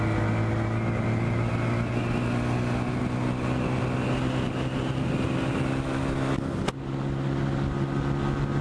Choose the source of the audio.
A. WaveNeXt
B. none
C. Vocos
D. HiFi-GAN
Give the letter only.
B